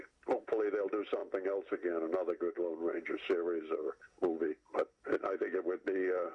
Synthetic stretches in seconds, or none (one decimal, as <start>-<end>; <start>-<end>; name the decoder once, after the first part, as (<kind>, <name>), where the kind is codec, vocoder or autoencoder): none